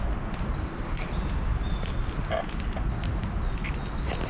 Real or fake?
real